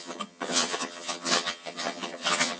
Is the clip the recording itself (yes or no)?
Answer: no